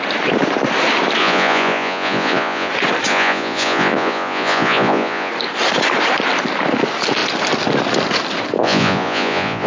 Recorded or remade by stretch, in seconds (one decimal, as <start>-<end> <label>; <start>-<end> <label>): 0.0-1.2 recorded; 1.2-2.7 remade; 2.7-3.1 recorded; 3.1-5.3 remade; 5.3-8.6 recorded; 8.6-9.7 remade